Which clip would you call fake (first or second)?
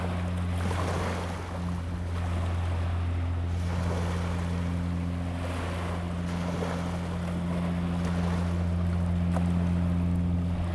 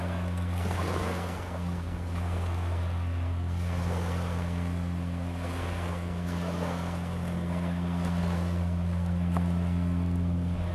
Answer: second